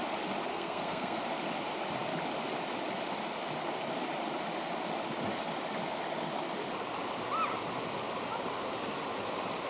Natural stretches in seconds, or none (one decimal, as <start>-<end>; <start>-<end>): 0.0-0.5; 1.2-9.7